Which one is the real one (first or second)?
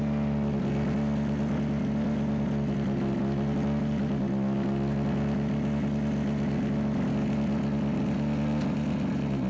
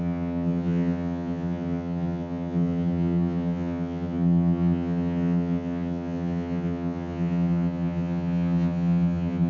first